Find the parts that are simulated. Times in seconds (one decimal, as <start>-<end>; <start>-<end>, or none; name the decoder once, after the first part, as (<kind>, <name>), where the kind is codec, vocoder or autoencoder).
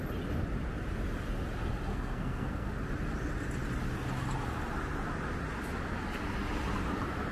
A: 1.9-2.7 (codec, SNAC)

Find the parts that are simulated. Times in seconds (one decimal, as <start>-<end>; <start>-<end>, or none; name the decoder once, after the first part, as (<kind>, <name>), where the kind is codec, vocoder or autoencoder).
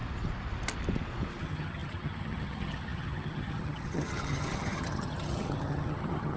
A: 1.4-6.4 (vocoder, HiFi-GAN)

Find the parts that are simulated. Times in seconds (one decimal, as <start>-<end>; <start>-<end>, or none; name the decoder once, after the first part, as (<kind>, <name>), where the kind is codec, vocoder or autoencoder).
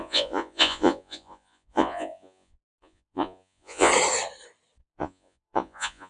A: 0.0-3.9 (vocoder, Vocos); 4.8-6.1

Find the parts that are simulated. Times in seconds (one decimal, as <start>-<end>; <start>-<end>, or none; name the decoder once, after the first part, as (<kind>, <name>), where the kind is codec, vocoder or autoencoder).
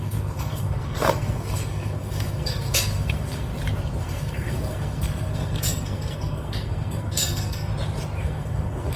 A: 0.0-3.5 (codec, SNAC); 4.0-7.7; 8.2-9.0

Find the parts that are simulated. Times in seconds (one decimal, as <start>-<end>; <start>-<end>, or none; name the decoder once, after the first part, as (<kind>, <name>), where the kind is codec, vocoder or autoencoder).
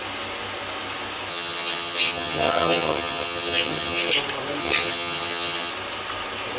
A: 1.3-4.1 (vocoder, HiFi-GAN); 4.6-5.7